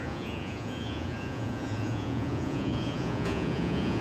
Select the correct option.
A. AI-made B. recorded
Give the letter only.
A